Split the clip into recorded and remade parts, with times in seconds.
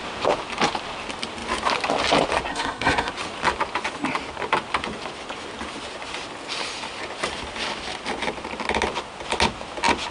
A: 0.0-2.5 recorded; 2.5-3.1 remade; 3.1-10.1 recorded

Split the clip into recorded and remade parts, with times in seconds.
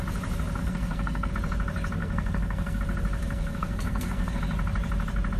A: 0.0-0.6 recorded; 0.6-1.3 remade; 1.3-2.0 recorded; 2.0-2.8 remade; 2.8-3.2 recorded; 3.2-4.4 remade; 4.4-5.4 recorded